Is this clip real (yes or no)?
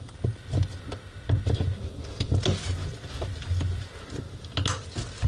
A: yes